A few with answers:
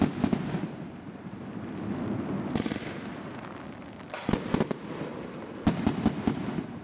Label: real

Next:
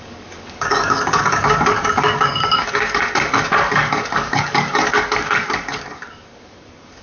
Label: fake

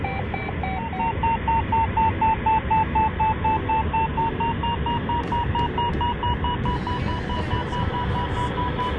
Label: real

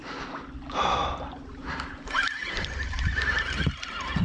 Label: real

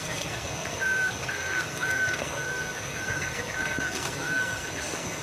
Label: fake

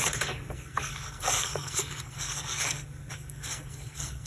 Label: fake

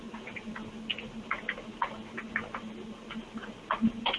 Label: real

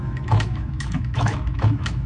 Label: fake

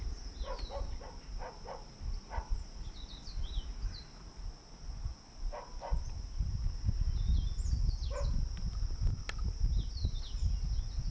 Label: real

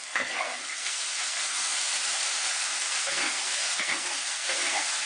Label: fake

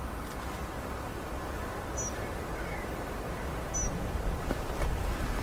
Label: real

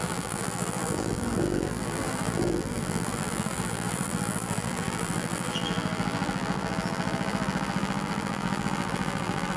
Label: fake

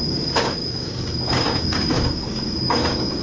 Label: fake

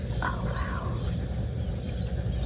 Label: real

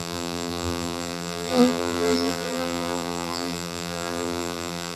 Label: fake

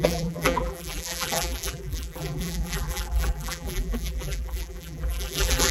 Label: fake